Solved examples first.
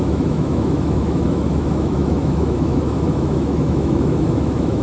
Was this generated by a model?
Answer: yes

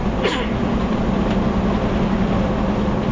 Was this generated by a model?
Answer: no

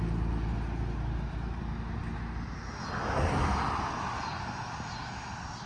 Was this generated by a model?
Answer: no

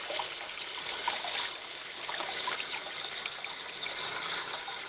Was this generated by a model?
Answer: no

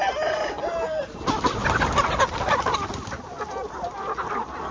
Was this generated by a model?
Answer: no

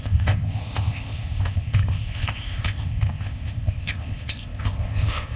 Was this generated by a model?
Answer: yes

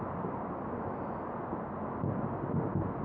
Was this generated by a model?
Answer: no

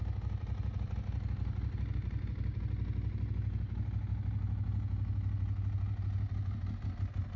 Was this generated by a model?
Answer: no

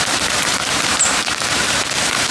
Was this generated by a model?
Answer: yes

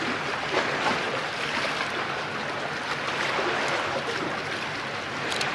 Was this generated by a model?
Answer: no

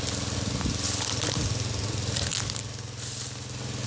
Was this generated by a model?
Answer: no